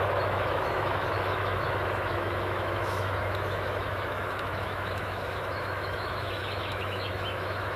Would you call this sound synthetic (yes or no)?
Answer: yes